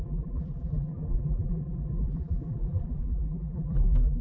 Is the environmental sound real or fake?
fake